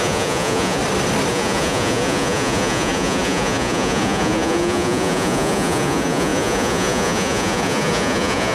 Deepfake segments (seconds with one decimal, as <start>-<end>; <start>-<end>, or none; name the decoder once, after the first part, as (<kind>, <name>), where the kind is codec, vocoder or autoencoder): 0.0-0.8 (vocoder, Vocos); 1.3-8.5